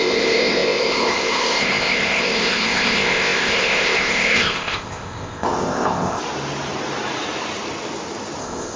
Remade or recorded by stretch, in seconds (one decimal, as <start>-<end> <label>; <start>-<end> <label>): 0.0-6.2 remade; 6.2-8.4 recorded; 8.4-8.8 remade